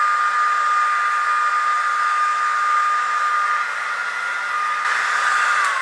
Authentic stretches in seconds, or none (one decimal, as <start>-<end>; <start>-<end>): 0.0-2.1; 3.3-5.8